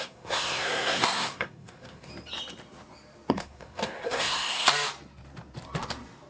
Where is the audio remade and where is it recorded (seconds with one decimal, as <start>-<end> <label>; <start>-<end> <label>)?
0.0-2.1 remade; 2.1-3.3 recorded; 3.3-4.7 remade; 4.7-6.3 recorded